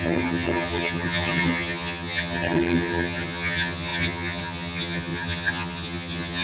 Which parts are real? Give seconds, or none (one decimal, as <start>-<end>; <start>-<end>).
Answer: none